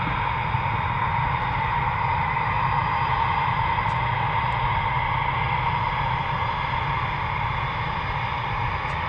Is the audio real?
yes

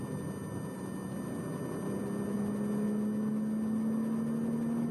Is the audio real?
yes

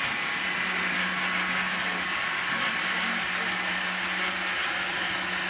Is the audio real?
yes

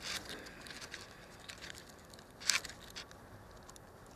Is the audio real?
yes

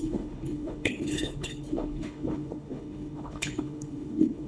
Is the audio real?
no